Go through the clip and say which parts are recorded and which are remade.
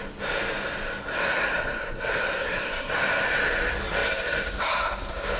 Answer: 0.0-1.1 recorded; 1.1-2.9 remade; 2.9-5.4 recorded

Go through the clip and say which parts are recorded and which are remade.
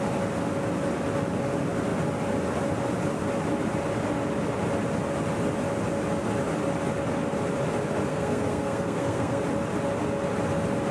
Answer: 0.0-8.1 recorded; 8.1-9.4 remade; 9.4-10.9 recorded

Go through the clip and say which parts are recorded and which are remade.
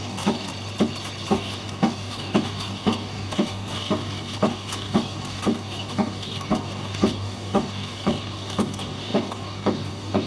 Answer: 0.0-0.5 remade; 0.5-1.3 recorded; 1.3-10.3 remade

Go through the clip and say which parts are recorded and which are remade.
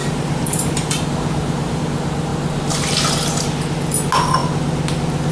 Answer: 0.0-1.8 remade; 1.8-5.3 recorded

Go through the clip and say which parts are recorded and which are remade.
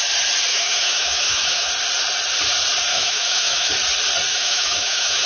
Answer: 0.0-0.5 recorded; 0.5-1.7 remade; 1.7-2.9 recorded; 2.9-3.7 remade; 3.7-4.3 recorded; 4.3-5.3 remade